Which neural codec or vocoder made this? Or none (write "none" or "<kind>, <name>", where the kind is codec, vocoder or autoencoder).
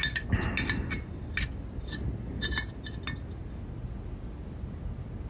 none